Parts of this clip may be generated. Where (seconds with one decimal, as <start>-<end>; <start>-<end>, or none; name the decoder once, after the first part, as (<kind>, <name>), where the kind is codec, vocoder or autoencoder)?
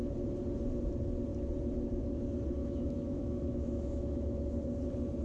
2.6-4.4 (autoencoder, DAC-VAE)